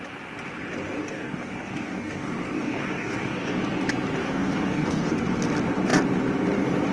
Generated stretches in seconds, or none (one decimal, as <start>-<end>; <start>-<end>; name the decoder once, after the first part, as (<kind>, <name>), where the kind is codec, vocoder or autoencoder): 1.0-3.6 (codec, DAC); 4.2-5.1